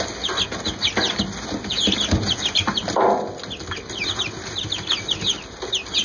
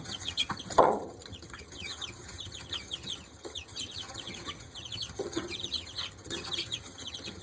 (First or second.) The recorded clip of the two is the first